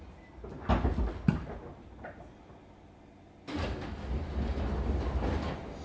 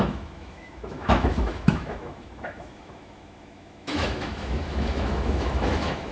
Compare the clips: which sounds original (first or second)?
first